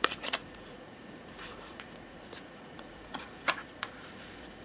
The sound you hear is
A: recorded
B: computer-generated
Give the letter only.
B